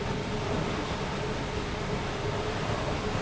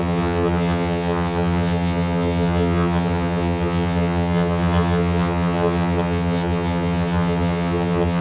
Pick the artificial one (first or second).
second